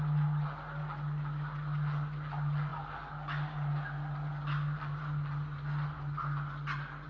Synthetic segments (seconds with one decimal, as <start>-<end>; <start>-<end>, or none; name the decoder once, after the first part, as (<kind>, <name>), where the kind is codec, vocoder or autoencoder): none